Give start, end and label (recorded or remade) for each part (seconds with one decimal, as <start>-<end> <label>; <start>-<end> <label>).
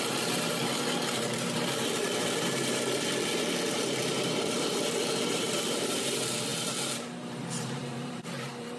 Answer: 0.0-8.8 remade